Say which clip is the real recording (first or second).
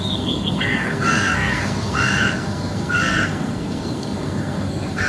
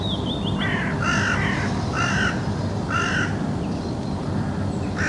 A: second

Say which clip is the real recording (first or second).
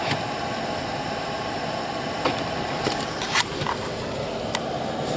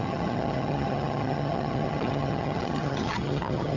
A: first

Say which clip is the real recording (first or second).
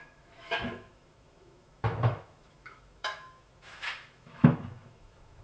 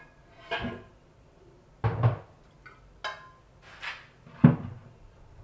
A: second